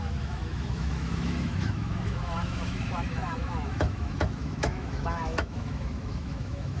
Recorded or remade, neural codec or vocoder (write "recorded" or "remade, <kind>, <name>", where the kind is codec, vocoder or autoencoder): remade, autoencoder, DAC-VAE